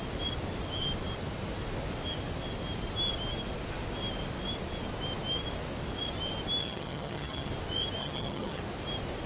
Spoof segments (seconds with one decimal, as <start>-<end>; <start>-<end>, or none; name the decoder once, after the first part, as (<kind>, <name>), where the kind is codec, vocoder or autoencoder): 6.6-7.5 (vocoder, HiFi-GAN); 8.0-8.6